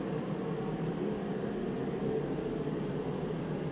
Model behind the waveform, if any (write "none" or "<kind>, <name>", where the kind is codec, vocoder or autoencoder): none